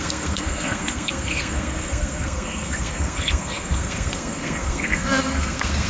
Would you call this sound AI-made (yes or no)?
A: yes